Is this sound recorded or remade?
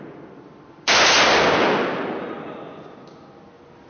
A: recorded